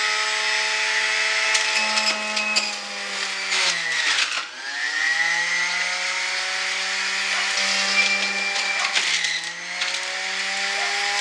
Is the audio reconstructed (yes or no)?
no